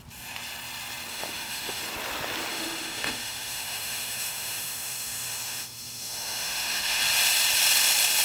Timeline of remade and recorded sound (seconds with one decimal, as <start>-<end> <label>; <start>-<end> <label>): 0.0-1.1 recorded; 1.1-1.8 remade; 1.8-2.5 recorded; 2.5-7.0 remade; 7.0-8.2 recorded